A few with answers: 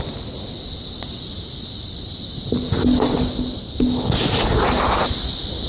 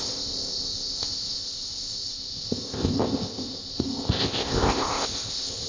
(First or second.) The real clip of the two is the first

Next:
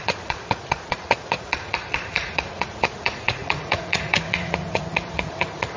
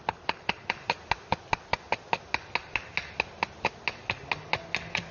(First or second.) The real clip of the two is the second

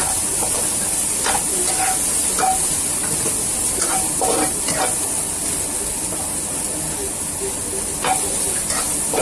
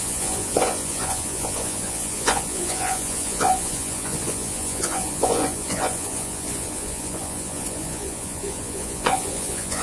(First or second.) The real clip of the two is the first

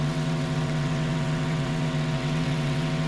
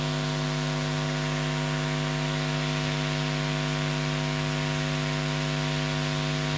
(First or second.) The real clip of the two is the second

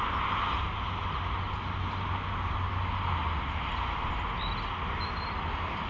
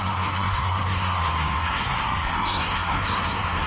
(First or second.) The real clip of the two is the first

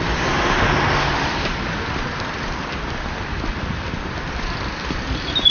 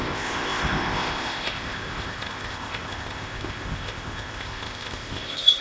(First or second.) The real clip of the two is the first